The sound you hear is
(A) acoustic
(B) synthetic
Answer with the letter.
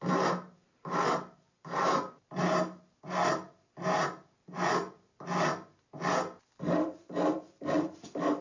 A